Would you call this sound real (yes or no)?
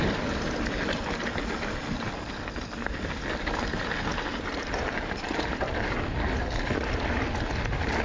yes